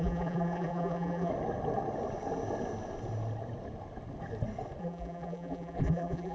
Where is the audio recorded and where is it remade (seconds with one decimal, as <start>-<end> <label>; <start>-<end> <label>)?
0.0-1.3 remade; 1.3-4.8 recorded; 4.8-6.3 remade